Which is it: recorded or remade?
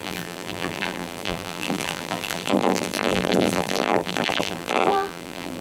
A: remade